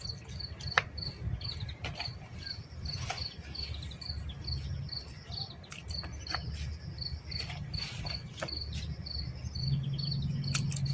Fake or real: real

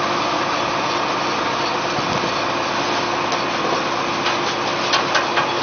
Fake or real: real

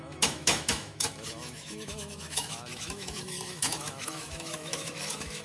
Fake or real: fake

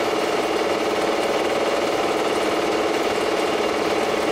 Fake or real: real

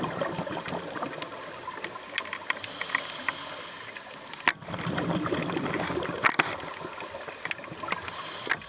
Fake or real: real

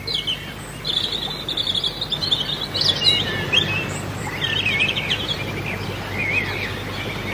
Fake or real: real